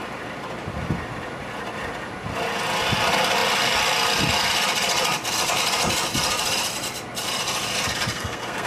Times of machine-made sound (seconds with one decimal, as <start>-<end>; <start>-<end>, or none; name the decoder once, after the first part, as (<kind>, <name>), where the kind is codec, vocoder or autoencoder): 8.1-8.7 (codec, SNAC)